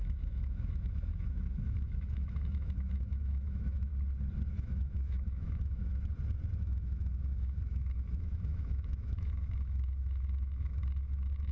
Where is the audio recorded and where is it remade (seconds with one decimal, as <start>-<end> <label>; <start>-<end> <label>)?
0.0-3.9 remade; 3.9-4.5 recorded; 4.5-5.9 remade; 5.9-6.6 recorded; 6.6-11.5 remade